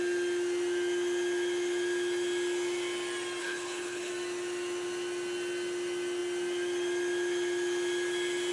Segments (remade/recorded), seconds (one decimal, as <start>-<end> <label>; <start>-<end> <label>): 0.0-3.4 recorded; 3.4-4.1 remade; 4.1-8.5 recorded